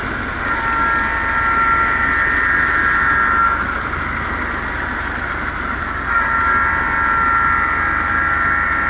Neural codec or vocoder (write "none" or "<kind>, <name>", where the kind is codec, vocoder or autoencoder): none